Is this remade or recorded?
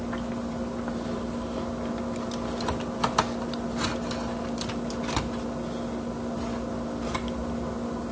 recorded